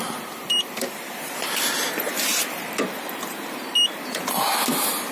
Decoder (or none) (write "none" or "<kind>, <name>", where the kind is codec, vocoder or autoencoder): vocoder, BigVGAN v2